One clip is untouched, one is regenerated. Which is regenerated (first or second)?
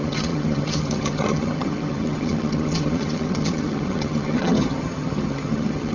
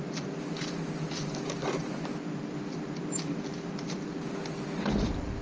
first